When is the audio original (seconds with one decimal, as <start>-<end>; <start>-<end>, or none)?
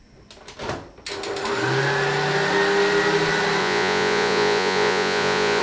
0.0-3.6